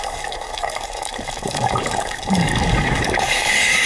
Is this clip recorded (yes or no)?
no